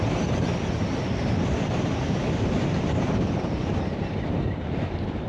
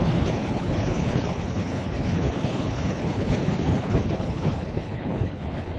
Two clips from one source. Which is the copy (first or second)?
second